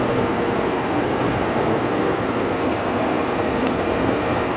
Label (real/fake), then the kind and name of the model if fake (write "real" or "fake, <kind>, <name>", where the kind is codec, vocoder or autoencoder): fake, codec, SNAC